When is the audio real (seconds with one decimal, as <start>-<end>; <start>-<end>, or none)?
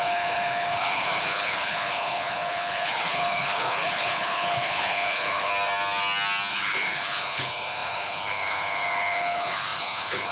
5.5-6.5